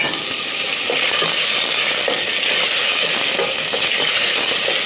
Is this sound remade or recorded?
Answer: recorded